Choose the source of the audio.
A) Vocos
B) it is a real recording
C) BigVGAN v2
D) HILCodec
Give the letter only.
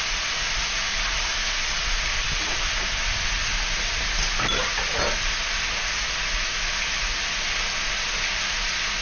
B